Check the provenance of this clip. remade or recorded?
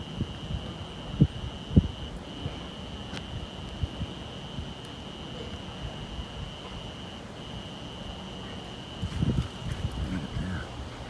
recorded